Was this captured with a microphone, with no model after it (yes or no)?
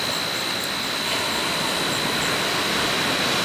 yes